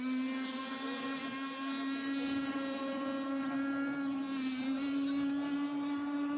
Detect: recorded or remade recorded